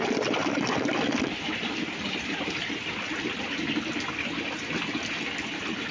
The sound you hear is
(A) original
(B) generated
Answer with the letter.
B